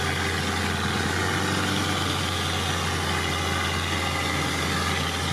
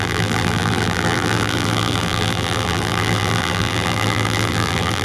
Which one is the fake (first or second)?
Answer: second